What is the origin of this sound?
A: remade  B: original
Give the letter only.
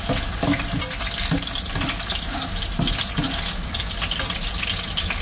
B